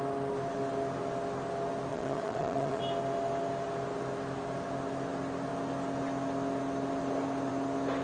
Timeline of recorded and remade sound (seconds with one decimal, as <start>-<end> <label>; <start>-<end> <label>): 0.0-1.9 recorded; 1.9-2.8 remade; 2.8-8.0 recorded